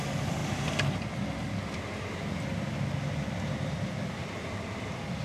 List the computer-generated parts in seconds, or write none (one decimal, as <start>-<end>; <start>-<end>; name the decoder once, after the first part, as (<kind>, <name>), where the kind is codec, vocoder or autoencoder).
none